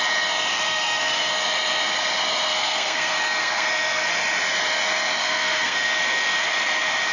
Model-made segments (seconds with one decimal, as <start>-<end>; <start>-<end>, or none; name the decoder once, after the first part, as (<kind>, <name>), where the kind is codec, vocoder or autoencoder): 0.5-1.3 (codec, SNAC); 2.5-4.1; 5.2-6.5